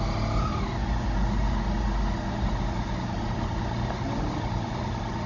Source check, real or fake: real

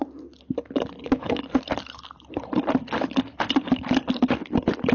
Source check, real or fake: real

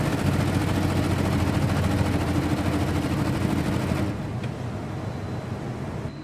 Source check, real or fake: real